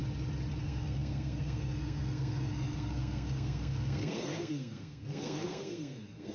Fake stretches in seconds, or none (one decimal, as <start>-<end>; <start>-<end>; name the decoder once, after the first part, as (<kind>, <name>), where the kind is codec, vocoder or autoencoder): 0.6-6.3 (codec, SNAC)